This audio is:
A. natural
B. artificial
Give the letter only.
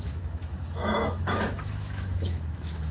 B